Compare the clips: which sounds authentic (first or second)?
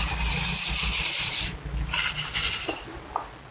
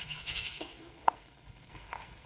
first